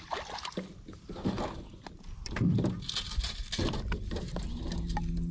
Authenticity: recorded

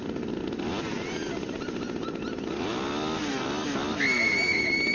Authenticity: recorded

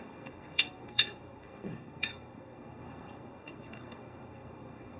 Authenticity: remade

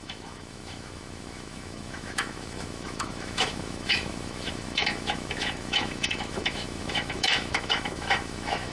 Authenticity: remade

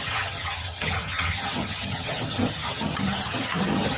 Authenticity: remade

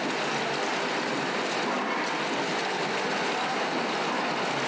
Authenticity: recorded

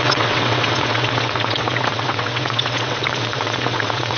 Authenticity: remade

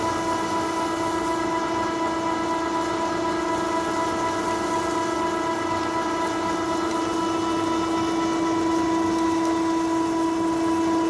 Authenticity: recorded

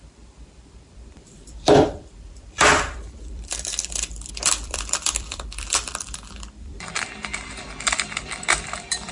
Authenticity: remade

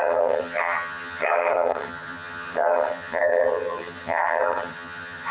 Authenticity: remade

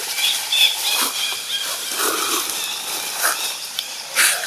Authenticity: recorded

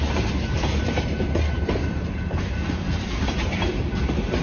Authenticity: remade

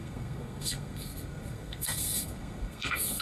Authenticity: remade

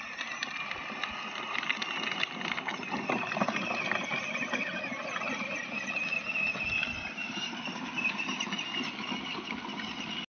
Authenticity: recorded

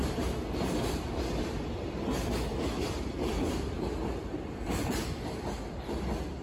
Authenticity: recorded